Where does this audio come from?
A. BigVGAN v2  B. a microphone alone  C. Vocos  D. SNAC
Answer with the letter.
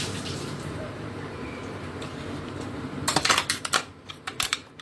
A